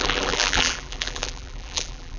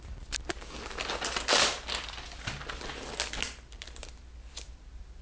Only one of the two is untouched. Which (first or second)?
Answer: second